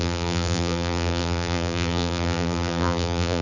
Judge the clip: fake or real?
fake